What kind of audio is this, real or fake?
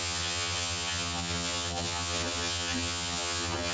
fake